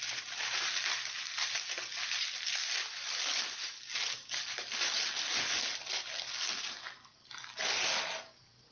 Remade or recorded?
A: recorded